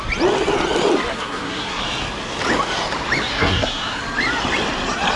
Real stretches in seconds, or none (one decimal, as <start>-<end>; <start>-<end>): 0.0-1.1; 1.8-3.3; 4.0-5.2